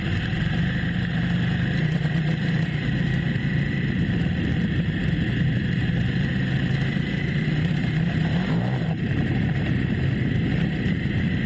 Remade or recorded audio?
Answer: remade